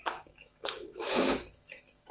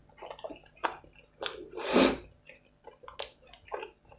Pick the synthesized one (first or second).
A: first